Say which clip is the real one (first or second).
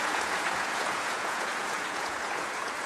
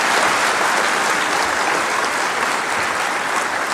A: second